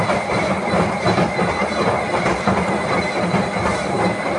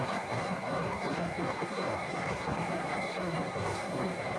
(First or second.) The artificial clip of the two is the second